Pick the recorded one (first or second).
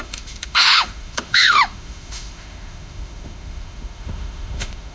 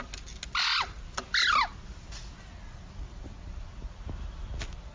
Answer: second